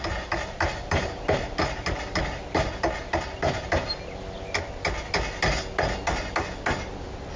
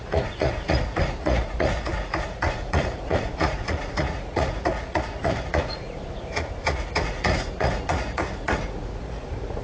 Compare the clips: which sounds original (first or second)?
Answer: first